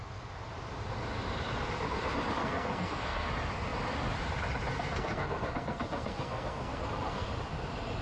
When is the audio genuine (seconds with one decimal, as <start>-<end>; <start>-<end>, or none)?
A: 0.0-2.4; 3.3-4.7; 7.3-8.0